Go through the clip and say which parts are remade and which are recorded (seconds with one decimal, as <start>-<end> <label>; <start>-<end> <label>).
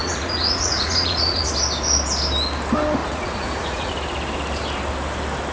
0.0-1.5 remade; 1.5-3.0 recorded; 3.0-3.9 remade; 3.9-5.5 recorded